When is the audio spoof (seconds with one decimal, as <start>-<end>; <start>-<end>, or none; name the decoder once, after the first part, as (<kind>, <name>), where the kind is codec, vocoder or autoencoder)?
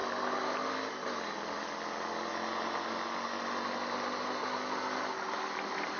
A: none